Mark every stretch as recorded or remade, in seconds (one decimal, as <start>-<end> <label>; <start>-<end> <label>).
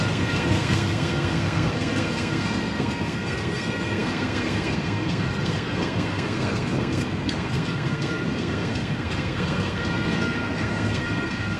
0.0-11.6 remade